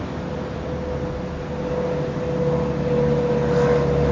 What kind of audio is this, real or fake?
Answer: real